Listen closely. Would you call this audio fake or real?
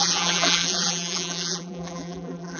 fake